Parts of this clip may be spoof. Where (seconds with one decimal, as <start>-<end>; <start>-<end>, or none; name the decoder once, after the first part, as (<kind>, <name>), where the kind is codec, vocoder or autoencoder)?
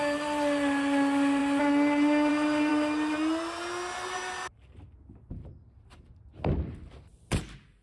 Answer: none